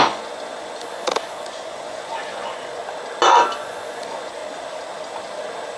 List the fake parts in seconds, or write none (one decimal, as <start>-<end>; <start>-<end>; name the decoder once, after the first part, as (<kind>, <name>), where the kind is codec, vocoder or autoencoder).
0.0-2.8 (vocoder, Vocos); 3.6-4.4